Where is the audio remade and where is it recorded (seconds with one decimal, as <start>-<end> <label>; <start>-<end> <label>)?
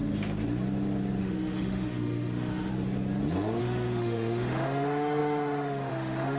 0.0-1.2 recorded; 1.2-2.7 remade; 2.7-3.6 recorded; 3.6-6.4 remade